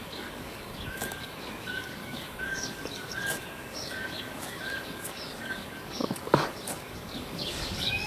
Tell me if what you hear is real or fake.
fake